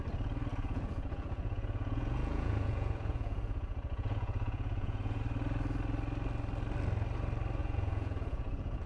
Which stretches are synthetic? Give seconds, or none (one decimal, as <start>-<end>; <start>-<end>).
0.5-5.2; 7.6-8.9